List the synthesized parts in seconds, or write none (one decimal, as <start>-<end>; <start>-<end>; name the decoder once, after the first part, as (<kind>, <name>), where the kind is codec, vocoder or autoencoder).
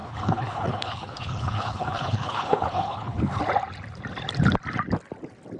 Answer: 0.0-3.4 (codec, HILCodec)